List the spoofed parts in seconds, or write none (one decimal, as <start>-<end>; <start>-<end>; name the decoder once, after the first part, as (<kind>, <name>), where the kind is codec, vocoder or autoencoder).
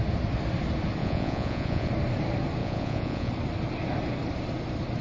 1.0-1.9 (vocoder, Vocos); 2.6-3.3